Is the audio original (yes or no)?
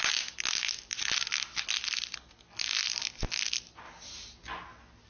yes